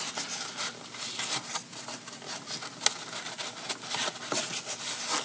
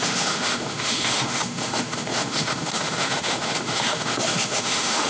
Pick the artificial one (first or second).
second